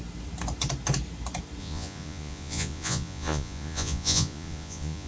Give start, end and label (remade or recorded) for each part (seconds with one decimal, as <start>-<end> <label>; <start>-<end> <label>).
0.0-1.6 recorded; 1.6-5.1 remade

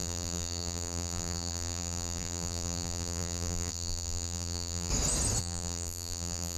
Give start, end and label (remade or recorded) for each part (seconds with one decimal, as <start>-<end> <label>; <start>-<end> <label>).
0.0-4.9 remade; 4.9-5.4 recorded; 5.4-6.6 remade

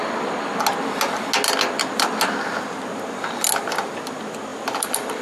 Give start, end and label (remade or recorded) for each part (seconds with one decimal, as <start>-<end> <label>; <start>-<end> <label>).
0.0-4.5 recorded; 4.5-5.2 remade

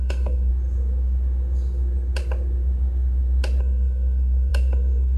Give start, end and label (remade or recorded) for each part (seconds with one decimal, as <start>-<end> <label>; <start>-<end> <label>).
0.0-0.5 remade; 0.5-3.6 recorded; 3.6-5.2 remade

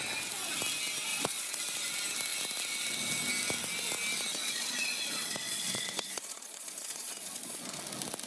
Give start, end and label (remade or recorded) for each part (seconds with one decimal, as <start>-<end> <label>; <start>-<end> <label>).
0.0-1.1 recorded; 1.1-1.6 remade; 1.6-4.3 recorded; 4.3-7.8 remade; 7.8-8.3 recorded

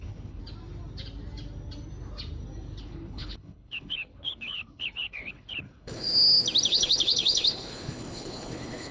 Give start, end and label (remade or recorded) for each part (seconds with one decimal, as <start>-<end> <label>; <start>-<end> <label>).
0.0-0.4 remade; 0.4-2.8 recorded; 2.8-6.1 remade; 6.1-6.7 recorded; 6.7-8.9 remade

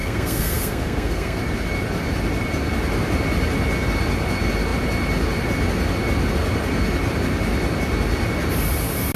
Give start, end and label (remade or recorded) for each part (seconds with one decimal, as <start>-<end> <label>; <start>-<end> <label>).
0.0-1.4 remade; 1.4-9.2 recorded